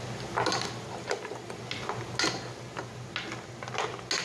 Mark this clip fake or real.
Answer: real